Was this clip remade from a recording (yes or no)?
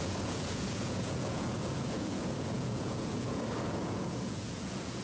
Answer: yes